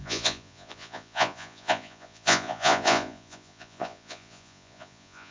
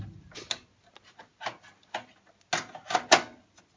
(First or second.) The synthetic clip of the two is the first